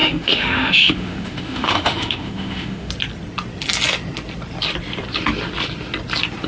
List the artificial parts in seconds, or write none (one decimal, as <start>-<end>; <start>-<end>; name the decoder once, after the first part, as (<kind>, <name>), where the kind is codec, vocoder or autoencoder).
0.0-2.9 (autoencoder, DAC-VAE)